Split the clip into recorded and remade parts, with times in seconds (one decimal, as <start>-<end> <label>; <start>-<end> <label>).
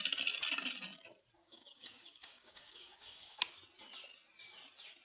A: 0.0-1.4 recorded; 1.4-3.4 remade; 3.4-5.0 recorded